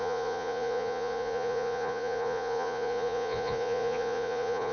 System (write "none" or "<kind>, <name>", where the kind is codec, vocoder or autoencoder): vocoder, Vocos